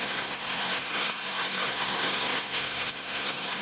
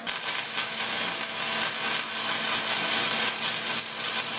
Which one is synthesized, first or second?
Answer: first